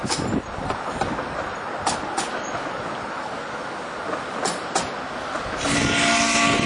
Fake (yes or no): no